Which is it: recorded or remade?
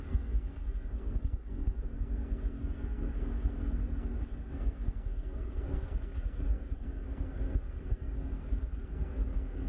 remade